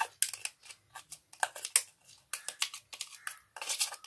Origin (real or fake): real